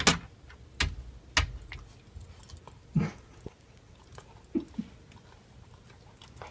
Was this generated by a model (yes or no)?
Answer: no